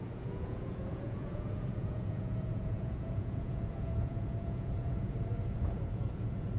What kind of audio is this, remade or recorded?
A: remade